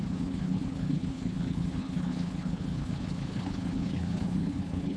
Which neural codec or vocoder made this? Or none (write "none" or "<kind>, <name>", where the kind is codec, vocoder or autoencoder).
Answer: codec, HILCodec